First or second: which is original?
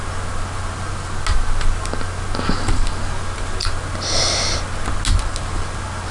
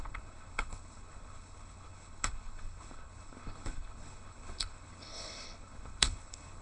first